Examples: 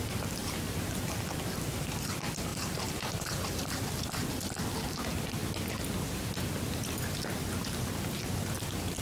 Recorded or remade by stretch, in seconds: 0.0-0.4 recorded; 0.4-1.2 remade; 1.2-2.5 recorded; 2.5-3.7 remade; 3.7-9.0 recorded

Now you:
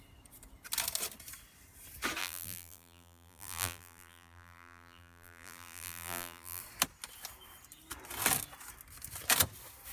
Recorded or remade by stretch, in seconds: 0.0-2.2 recorded; 2.2-6.6 remade; 6.6-9.9 recorded